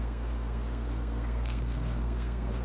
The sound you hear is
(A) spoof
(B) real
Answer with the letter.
A